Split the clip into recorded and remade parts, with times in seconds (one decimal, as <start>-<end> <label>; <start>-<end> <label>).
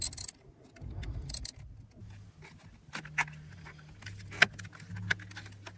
0.0-5.8 recorded